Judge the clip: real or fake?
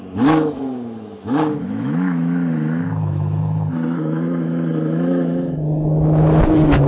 fake